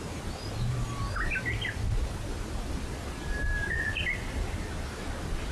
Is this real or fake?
real